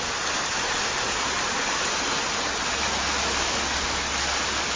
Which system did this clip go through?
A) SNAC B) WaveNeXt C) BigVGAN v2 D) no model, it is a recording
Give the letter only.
D